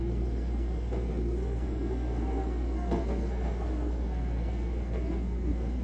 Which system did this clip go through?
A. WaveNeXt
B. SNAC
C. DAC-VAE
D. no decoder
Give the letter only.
B